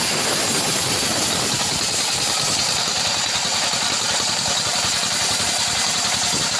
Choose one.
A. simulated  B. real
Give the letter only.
A